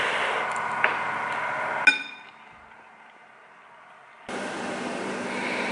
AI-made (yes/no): no